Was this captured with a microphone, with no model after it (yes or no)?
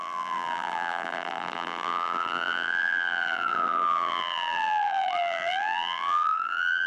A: no